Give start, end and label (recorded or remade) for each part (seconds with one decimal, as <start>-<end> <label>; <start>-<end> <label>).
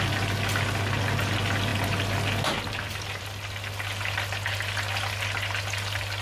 0.0-6.2 recorded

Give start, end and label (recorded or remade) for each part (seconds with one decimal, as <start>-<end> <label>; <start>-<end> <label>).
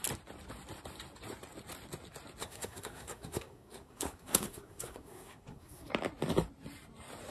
0.0-2.4 recorded; 2.4-5.9 remade; 5.9-7.3 recorded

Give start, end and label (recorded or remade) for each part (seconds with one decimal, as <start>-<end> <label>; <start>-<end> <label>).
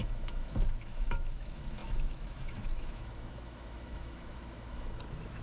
0.0-5.4 remade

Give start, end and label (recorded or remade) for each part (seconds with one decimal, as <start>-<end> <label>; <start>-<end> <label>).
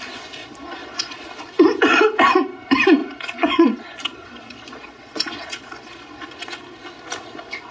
0.0-0.4 recorded; 0.4-1.3 remade; 1.3-3.0 recorded; 3.0-6.6 remade; 6.6-7.7 recorded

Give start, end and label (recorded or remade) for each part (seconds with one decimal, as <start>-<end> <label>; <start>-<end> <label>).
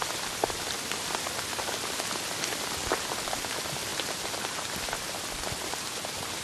0.0-6.4 recorded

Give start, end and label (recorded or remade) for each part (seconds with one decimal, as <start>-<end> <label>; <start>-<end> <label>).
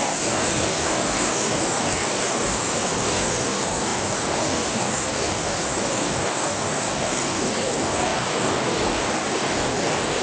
0.0-10.2 remade